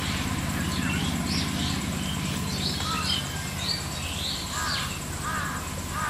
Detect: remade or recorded recorded